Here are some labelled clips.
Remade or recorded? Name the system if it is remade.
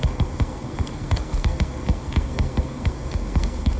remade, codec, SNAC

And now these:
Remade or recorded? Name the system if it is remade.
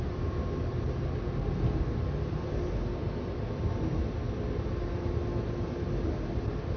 recorded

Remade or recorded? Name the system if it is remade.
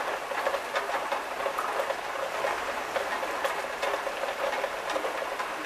recorded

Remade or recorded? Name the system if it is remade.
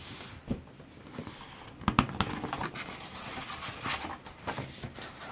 recorded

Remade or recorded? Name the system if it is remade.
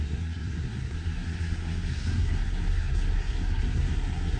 remade, codec, SNAC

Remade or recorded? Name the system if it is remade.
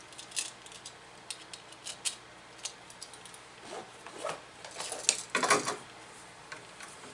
recorded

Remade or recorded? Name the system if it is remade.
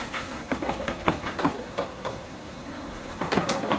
remade, codec, SNAC